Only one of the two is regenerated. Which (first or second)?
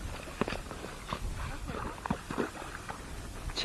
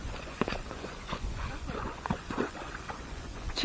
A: second